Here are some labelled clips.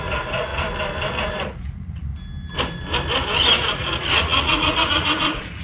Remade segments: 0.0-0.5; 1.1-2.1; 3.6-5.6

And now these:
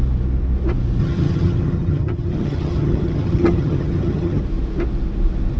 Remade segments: 1.0-4.4